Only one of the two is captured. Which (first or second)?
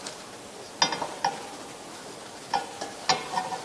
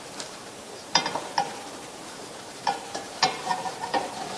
first